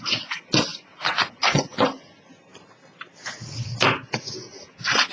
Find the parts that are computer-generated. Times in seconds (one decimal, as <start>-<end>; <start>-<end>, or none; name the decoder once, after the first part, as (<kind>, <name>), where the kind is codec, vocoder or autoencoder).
none